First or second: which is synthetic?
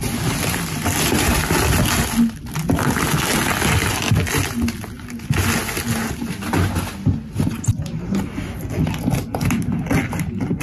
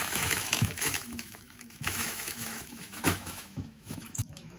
second